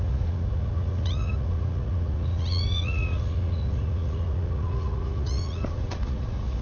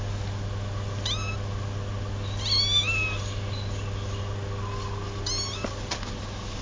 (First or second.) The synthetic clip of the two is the first